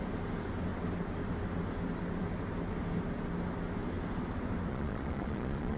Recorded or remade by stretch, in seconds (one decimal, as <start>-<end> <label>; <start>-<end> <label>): 0.0-4.7 recorded; 4.7-5.8 remade